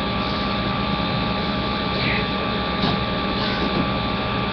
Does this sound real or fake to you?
fake